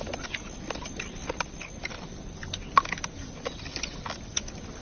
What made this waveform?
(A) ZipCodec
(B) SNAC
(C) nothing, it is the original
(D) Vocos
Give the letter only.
C